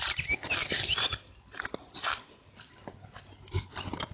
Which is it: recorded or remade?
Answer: recorded